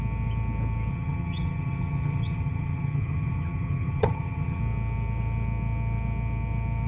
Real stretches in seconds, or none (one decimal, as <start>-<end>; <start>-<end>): 0.0-0.9; 4.6-6.9

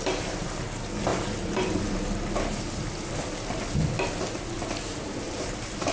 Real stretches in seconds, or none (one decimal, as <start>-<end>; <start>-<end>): 0.0-5.9